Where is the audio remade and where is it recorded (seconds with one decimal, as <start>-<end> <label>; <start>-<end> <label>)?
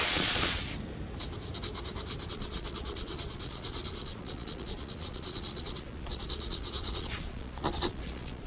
0.0-0.6 remade; 0.6-2.3 recorded; 2.3-8.5 remade